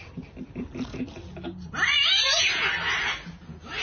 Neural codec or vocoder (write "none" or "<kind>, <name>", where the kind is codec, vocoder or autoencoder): none